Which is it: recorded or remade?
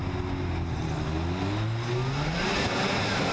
recorded